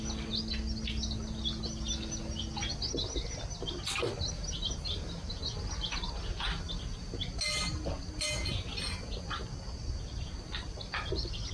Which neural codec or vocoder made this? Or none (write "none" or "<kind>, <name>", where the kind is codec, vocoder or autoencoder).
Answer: none